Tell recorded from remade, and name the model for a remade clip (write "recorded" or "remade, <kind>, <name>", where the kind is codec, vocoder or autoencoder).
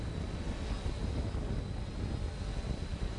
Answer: recorded